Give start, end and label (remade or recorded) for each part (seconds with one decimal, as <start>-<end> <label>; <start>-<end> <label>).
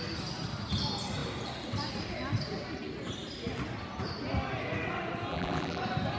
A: 0.0-5.3 recorded; 5.3-5.8 remade; 5.8-6.2 recorded